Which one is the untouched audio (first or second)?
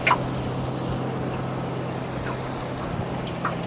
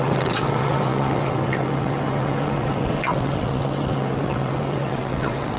first